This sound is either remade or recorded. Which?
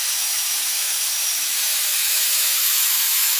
remade